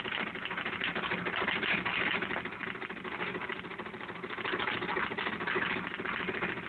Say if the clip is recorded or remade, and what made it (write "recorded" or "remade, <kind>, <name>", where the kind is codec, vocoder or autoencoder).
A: recorded